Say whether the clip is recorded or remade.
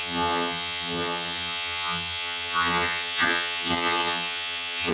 remade